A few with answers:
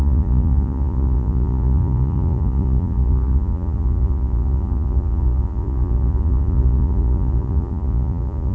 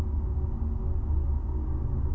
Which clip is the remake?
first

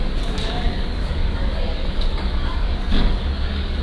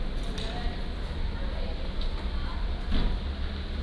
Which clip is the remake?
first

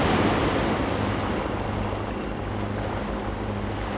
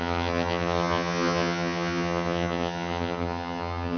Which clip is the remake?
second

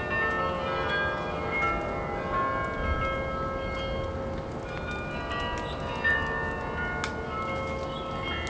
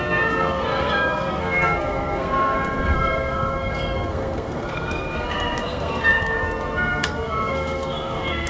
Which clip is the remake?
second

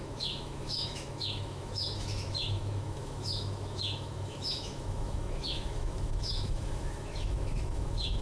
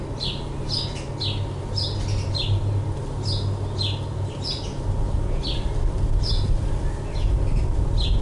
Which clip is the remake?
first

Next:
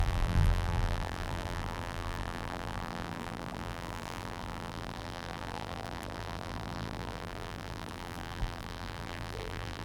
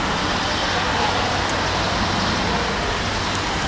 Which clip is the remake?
first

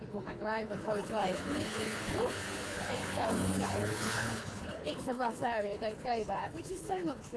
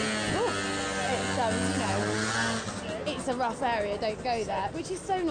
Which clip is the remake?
first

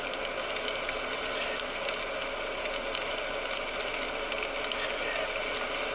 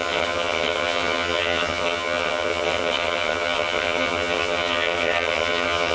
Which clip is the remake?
second